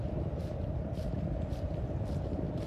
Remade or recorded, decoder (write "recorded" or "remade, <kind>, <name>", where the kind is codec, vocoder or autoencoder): recorded